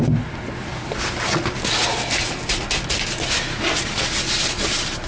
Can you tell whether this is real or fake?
real